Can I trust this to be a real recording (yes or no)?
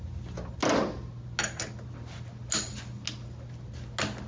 yes